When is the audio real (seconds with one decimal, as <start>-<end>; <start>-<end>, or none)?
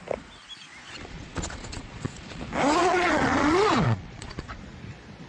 0.0-0.8; 2.4-2.8; 4.6-5.3